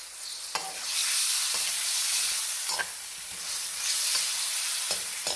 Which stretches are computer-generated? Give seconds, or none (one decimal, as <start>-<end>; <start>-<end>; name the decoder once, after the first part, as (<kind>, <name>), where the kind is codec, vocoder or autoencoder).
none